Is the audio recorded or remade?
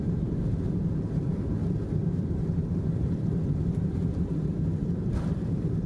remade